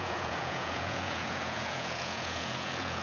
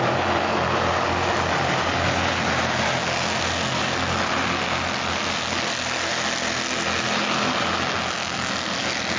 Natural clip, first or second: second